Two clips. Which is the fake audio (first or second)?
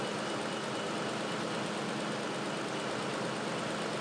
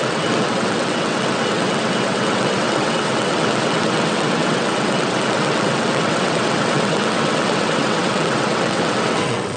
second